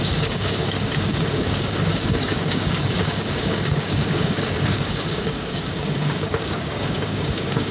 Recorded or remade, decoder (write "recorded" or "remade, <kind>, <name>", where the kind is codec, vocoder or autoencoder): remade, codec, DAC